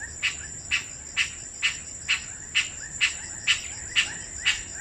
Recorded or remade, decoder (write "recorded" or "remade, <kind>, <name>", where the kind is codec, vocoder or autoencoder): recorded